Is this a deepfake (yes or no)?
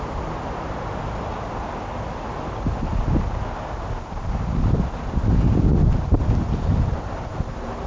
no